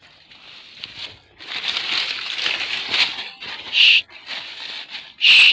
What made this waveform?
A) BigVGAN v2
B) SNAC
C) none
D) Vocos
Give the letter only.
C